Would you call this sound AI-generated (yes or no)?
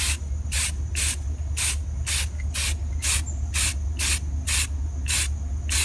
no